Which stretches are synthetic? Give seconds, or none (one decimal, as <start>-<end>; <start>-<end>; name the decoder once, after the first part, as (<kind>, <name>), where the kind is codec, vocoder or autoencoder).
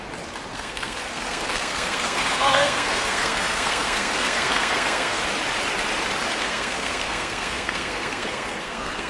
0.5-5.2 (codec, SNAC); 6.3-9.1